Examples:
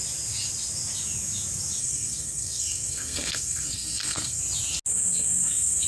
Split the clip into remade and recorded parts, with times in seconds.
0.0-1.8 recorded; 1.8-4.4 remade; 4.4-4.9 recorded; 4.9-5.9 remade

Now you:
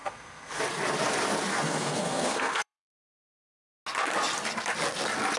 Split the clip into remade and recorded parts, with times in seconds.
0.0-0.6 remade; 0.6-1.5 recorded; 1.5-3.3 remade; 3.3-5.4 recorded